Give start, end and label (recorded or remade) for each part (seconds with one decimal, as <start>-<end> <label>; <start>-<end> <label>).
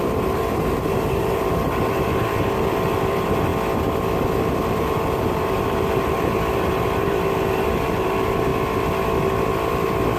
0.0-3.5 remade; 3.5-4.5 recorded; 4.5-8.5 remade; 8.5-10.2 recorded